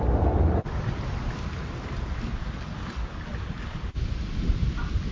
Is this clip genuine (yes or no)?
yes